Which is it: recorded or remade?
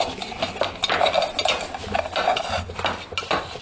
recorded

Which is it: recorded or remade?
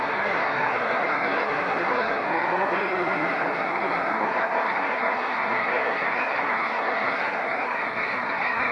remade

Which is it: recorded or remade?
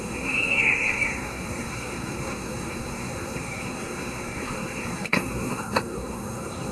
remade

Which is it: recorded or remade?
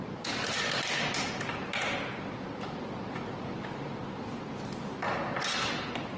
recorded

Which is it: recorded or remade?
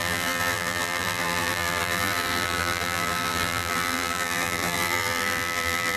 remade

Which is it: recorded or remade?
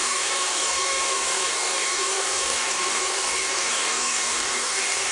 remade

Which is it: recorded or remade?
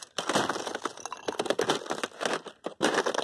recorded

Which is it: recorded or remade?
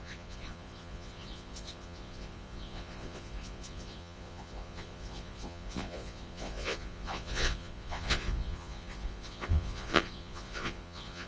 remade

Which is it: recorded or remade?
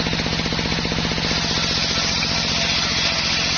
recorded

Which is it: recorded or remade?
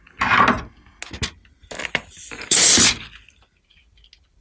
recorded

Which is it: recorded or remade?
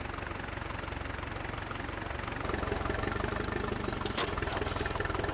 recorded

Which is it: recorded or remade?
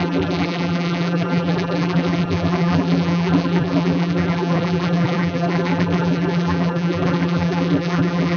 remade